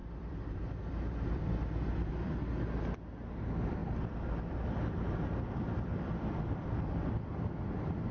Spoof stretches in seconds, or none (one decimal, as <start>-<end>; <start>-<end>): 0.0-2.5; 3.8-7.3

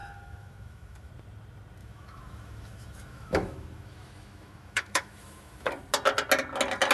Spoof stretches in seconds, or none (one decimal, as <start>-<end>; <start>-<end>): 0.0-1.1; 1.8-5.7

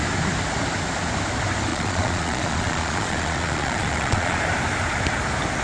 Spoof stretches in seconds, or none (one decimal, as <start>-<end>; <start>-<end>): 1.7-4.4

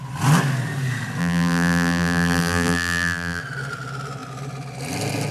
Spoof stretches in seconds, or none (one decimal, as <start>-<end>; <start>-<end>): 1.2-3.4